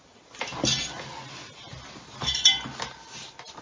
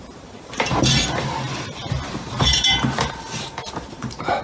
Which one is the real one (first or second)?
first